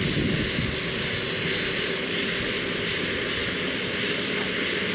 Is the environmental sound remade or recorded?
recorded